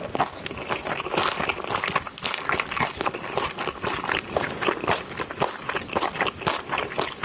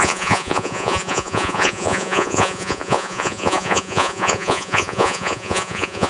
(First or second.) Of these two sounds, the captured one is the first